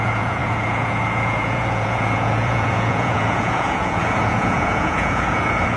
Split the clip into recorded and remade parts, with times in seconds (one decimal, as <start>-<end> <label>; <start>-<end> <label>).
0.0-5.8 remade